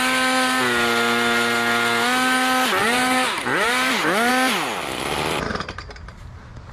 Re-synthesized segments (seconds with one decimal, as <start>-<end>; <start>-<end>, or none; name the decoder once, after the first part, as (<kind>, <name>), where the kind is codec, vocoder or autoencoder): 2.8-4.3 (vocoder, BigVGAN v2); 5.5-6.3